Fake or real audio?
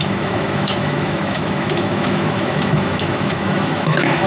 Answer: fake